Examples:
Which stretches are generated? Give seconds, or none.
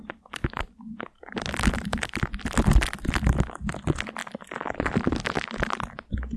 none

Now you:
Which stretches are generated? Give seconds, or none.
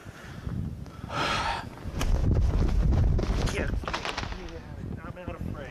0.0-1.6 (vocoder, BigVGAN v2)